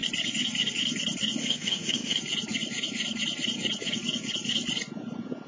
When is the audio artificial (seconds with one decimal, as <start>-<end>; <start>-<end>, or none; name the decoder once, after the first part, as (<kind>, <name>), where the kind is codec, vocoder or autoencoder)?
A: 1.4-2.2 (autoencoder, DAC-VAE)